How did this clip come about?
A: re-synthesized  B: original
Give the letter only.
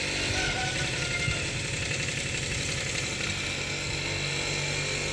B